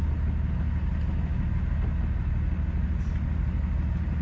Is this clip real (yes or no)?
yes